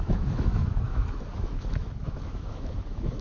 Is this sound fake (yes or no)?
yes